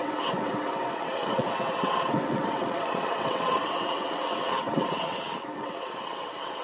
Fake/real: fake